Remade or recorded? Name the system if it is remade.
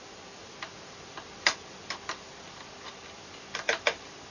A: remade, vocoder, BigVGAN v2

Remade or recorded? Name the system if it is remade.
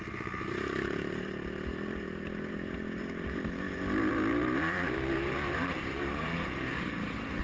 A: remade, vocoder, BigVGAN v2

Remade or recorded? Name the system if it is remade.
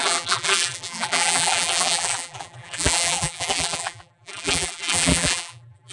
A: remade, vocoder, BigVGAN v2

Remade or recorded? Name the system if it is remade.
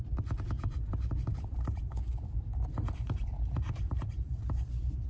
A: remade, vocoder, BigVGAN v2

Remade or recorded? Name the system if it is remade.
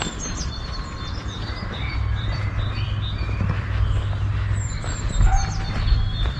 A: remade, vocoder, BigVGAN v2